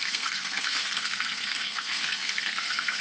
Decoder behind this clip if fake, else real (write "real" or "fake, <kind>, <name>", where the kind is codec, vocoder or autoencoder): fake, codec, SNAC